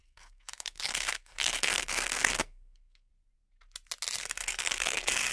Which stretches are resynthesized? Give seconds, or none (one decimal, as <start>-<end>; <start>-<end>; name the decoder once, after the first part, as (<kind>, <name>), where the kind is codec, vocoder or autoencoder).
0.0-3.1 (codec, SNAC); 4.2-5.3